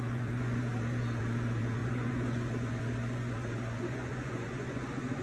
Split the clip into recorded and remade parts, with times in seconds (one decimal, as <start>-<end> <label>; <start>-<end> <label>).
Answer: 0.0-5.2 remade